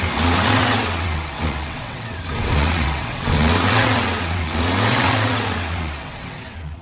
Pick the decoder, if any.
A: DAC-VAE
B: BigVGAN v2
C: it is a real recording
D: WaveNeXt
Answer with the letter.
D